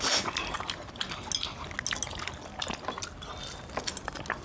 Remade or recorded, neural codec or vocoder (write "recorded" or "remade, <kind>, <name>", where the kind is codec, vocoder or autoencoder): recorded